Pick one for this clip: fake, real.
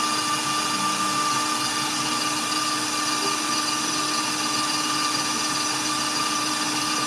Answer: real